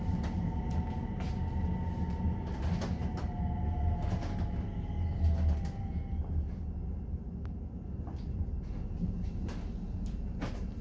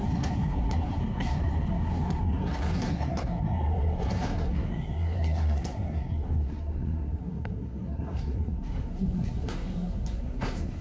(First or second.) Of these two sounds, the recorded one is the first